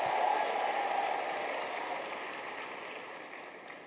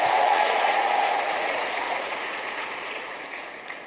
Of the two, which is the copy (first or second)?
second